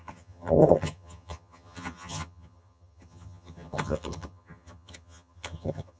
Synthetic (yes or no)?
yes